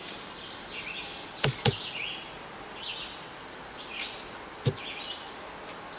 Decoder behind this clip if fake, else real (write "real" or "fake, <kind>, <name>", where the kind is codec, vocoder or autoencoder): real